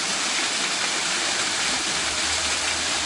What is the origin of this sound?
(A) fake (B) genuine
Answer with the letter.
B